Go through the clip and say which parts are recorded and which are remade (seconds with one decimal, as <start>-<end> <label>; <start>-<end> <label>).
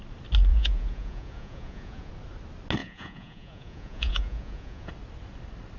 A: 0.0-0.5 recorded; 0.5-2.1 remade; 2.1-2.8 recorded; 2.8-4.9 remade; 4.9-5.8 recorded